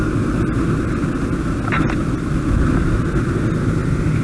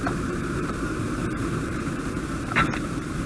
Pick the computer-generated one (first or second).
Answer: second